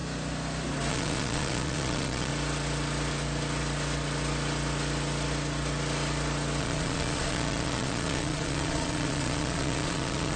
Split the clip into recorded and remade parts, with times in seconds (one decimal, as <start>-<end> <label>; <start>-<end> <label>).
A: 0.0-0.9 recorded; 0.9-2.3 remade; 2.3-6.6 recorded; 6.6-10.4 remade